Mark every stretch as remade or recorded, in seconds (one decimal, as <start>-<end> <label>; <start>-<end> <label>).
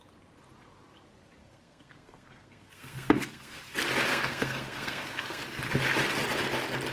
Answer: 0.0-1.4 recorded; 1.4-3.6 remade; 3.6-4.1 recorded; 4.1-5.4 remade; 5.4-6.9 recorded